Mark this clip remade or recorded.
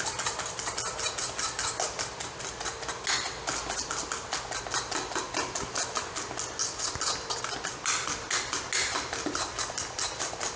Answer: recorded